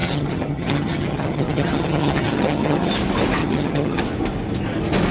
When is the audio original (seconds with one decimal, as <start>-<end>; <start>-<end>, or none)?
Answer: 2.9-3.4; 4.0-5.1